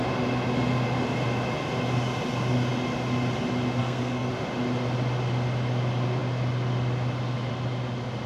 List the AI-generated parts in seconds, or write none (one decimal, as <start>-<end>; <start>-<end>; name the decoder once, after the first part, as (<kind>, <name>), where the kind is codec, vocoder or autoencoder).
3.8-4.3 (codec, SNAC)